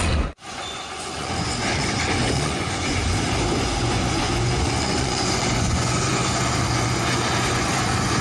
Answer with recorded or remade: remade